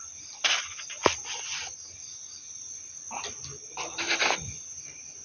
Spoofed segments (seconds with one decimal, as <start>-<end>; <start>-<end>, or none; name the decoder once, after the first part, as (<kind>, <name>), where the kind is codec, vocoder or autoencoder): 0.0-2.8 (vocoder, BigVGAN v2); 3.3-5.2